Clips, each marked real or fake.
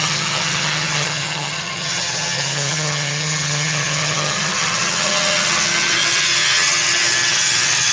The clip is fake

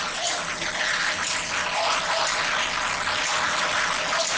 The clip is real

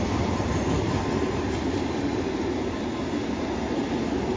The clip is real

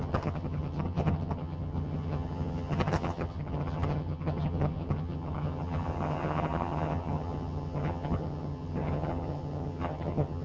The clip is fake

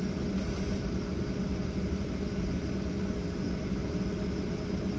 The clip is real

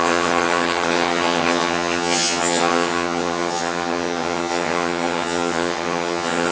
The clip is fake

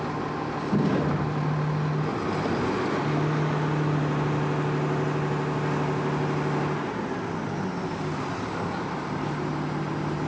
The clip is real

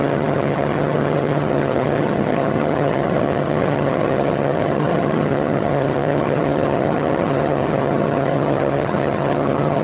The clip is fake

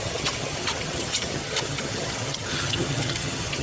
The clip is fake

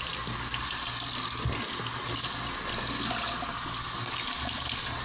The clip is real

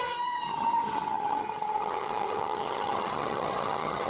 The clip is fake